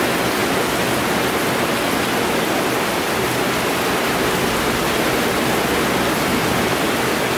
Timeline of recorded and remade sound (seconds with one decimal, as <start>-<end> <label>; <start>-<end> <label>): 0.0-7.4 recorded